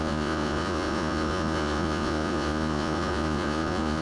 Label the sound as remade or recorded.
remade